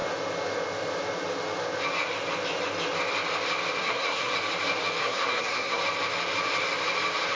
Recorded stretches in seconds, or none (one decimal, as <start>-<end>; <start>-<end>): 0.0-3.8; 4.3-5.0; 5.8-7.3